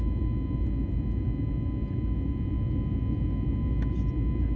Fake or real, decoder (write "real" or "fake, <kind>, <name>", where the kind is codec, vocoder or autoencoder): real